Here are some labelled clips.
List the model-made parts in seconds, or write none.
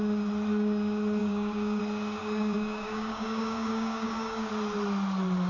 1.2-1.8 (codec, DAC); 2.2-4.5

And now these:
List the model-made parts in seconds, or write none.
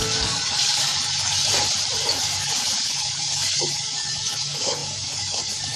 0.0-1.5 (codec, DAC); 2.2-5.8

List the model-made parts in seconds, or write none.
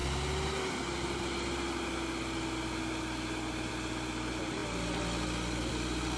none